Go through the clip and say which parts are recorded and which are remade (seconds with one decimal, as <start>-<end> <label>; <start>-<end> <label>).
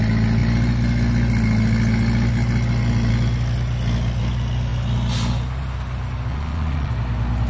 0.0-6.3 recorded; 6.3-6.9 remade; 6.9-7.5 recorded